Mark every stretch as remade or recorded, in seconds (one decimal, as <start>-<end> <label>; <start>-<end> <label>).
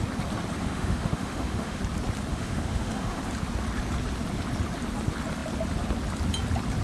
0.0-0.6 recorded; 0.6-1.8 remade; 1.8-2.3 recorded; 2.3-3.2 remade; 3.2-6.8 recorded